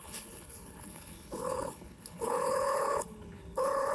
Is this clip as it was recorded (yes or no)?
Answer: no